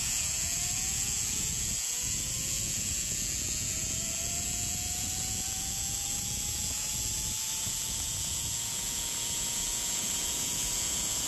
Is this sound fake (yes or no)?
yes